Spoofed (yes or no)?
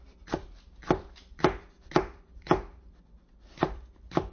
no